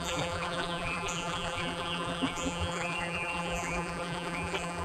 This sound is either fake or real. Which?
fake